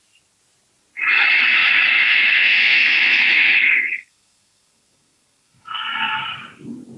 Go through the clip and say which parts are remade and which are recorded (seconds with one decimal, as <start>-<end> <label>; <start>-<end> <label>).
0.0-2.0 recorded; 2.0-6.2 remade; 6.2-7.0 recorded